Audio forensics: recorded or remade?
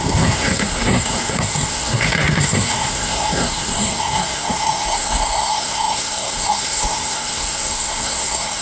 remade